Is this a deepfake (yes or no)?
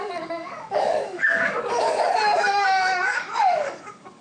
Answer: yes